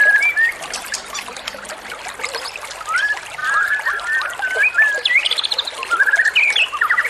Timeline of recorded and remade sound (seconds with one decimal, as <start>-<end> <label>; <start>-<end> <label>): 0.0-3.4 recorded; 3.4-3.9 remade; 3.9-7.1 recorded